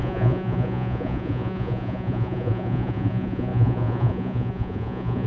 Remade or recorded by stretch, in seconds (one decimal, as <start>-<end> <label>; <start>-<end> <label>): 0.0-5.3 remade